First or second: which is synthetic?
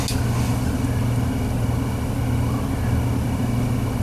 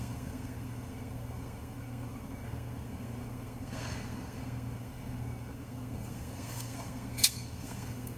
second